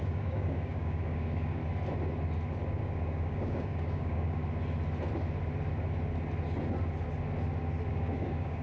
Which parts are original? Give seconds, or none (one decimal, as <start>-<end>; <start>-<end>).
1.6-2.8; 4.4-7.9